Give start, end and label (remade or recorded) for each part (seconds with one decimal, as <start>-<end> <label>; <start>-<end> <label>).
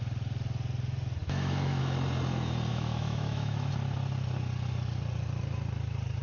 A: 0.0-1.2 recorded; 1.2-1.8 remade; 1.8-2.7 recorded; 2.7-3.7 remade; 3.7-6.2 recorded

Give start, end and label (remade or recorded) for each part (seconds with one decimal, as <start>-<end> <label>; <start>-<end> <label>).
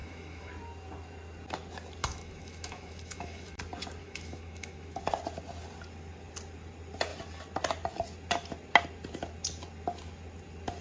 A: 0.0-0.5 remade; 0.5-2.0 recorded; 2.0-3.6 remade; 3.6-4.0 recorded; 4.0-5.0 remade; 5.0-10.8 recorded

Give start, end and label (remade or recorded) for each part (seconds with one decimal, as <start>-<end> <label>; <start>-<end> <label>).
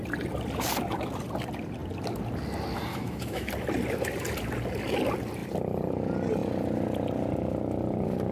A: 0.0-2.9 recorded; 2.9-3.5 remade; 3.5-8.3 recorded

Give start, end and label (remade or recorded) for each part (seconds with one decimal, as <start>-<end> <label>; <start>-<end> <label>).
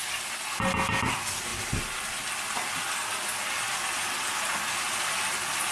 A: 0.0-5.7 recorded